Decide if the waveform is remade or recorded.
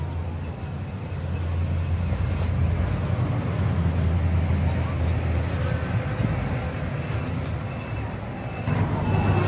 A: recorded